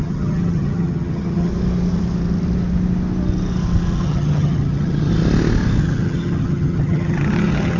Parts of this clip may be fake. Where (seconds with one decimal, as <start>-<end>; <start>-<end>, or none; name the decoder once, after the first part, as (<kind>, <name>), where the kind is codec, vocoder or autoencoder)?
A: 0.0-1.5 (vocoder, HiFi-GAN); 4.0-5.1; 5.8-7.8